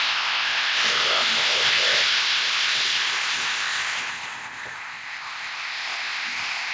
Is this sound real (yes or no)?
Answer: no